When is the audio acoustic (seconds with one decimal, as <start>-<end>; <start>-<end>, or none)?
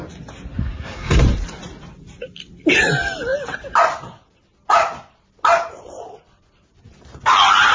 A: 0.0-0.6; 1.2-7.7